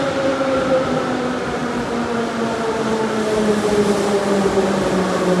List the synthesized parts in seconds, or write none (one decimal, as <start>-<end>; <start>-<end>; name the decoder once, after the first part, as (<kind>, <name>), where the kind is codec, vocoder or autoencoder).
none